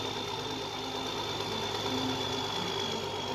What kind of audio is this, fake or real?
real